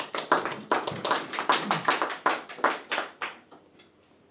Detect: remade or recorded recorded